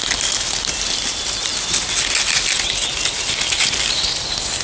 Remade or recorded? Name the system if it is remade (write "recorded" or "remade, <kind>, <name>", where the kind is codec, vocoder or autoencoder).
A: recorded